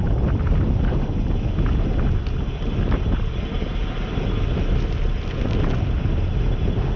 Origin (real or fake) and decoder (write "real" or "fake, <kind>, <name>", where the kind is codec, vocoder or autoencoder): real